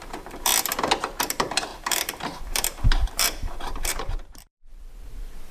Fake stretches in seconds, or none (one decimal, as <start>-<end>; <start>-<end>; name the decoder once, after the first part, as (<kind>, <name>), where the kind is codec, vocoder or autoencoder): 0.0-0.5 (vocoder, BigVGAN v2); 1.2-5.5